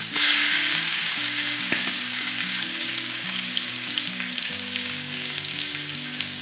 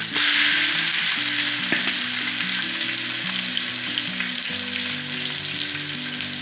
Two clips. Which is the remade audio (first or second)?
first